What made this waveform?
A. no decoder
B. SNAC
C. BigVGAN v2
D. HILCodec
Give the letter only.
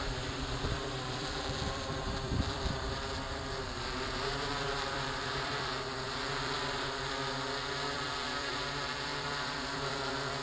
C